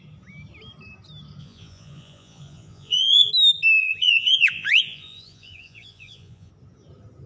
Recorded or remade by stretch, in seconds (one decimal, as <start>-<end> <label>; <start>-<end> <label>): 0.0-1.4 recorded; 1.4-3.3 remade; 3.3-3.8 recorded; 3.8-6.5 remade; 6.5-7.3 recorded